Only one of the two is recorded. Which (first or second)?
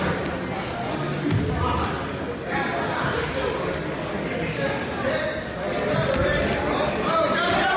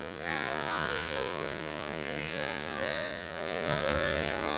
first